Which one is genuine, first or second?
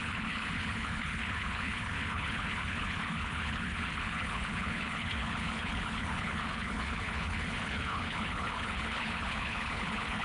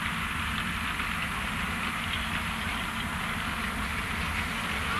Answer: second